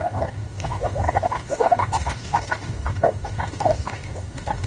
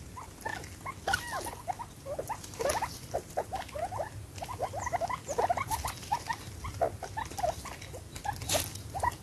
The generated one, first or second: first